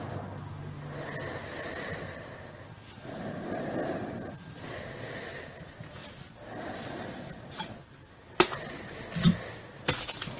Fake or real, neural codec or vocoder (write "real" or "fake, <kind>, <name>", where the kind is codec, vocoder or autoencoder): real